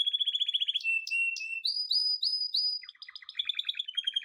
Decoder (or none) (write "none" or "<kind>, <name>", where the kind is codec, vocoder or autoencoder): none